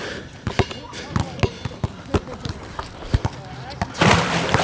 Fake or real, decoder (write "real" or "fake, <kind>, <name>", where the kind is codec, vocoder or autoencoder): real